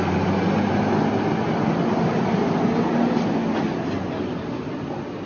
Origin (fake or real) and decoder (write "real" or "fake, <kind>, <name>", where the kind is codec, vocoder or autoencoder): real